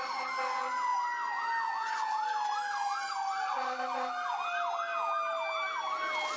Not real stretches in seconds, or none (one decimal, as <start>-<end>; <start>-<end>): none